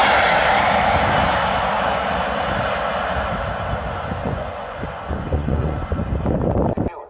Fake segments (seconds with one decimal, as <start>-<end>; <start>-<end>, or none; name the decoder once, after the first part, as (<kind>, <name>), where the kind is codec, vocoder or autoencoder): 4.2-6.0 (vocoder, Vocos)